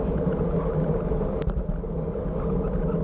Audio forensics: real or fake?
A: real